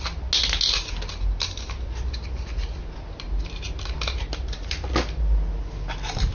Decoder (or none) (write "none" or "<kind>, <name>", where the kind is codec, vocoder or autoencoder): none